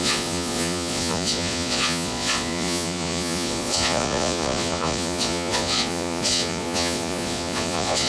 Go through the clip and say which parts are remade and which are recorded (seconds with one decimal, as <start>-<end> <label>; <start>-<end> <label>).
0.0-8.1 remade